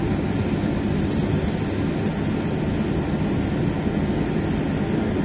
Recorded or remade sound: recorded